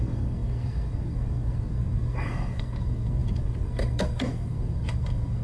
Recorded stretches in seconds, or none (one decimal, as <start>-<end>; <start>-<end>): none